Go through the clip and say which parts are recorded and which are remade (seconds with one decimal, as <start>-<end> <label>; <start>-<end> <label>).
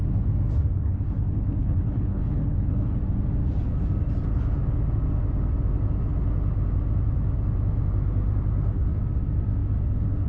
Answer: 0.0-0.7 recorded; 0.7-3.0 remade; 3.0-10.3 recorded